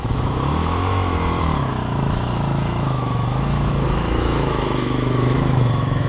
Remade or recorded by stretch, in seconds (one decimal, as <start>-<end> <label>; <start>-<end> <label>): 0.0-6.1 remade